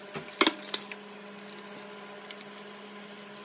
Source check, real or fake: real